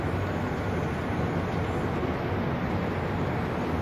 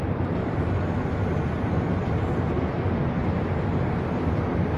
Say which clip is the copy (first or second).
second